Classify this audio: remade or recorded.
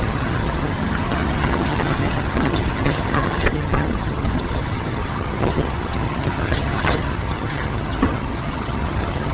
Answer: remade